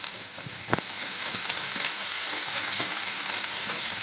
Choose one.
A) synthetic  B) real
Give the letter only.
A